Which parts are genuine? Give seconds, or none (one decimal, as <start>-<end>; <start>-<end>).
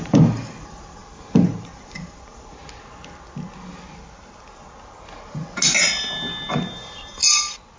2.6-6.5; 7.2-7.8